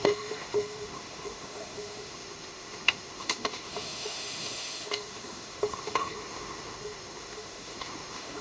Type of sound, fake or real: fake